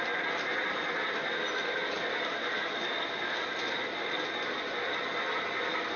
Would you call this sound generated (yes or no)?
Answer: no